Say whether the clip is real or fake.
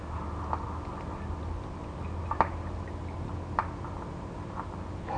real